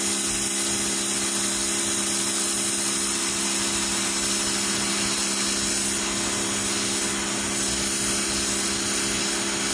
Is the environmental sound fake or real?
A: real